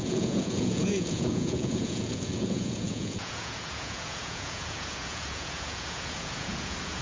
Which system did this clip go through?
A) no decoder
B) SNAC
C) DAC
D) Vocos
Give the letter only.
D